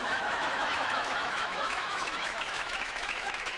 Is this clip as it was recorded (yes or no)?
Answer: no